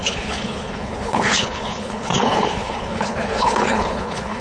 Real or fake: fake